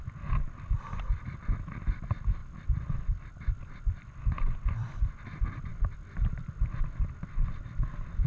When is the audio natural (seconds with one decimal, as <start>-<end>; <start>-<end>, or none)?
0.0-2.4; 4.9-8.3